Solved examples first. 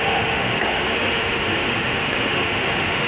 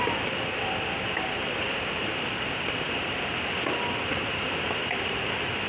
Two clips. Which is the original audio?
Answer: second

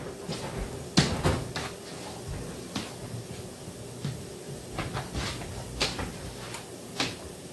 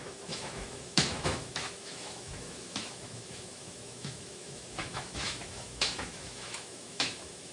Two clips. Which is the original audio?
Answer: first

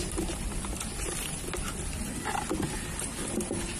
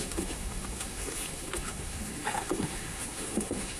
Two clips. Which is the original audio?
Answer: first